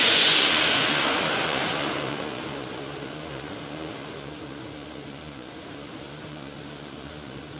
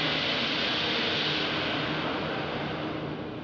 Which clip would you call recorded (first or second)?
second